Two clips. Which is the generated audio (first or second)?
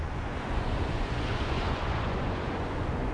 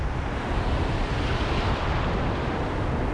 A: first